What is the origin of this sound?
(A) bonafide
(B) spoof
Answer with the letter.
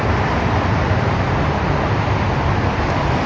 A